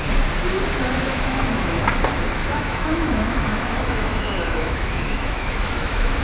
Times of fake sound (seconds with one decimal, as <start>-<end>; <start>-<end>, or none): 1.0-1.8; 2.4-6.2